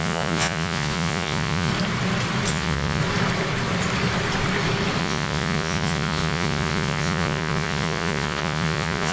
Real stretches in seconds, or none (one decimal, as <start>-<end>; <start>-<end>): 1.7-2.5; 3.0-5.0